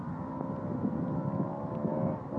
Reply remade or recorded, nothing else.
recorded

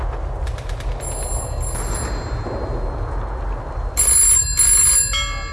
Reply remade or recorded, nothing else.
recorded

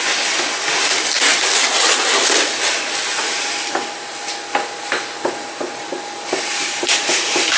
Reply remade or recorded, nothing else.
recorded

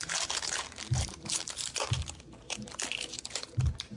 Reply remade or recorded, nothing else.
remade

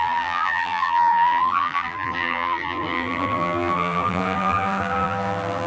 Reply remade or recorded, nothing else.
remade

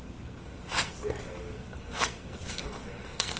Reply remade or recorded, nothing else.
remade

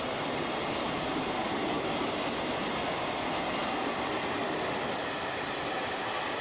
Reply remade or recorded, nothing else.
recorded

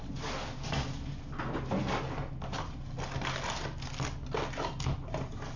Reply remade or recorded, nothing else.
recorded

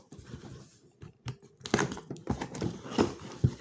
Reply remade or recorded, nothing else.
recorded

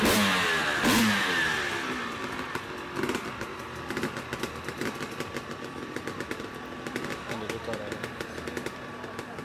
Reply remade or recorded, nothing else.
recorded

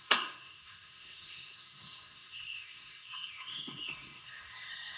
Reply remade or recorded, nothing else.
remade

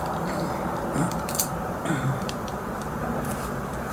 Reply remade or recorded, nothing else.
remade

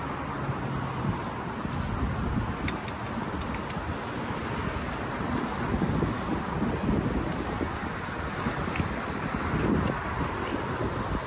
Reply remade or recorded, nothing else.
recorded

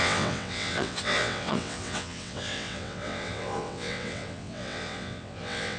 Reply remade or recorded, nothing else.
remade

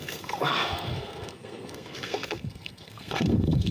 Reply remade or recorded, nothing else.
remade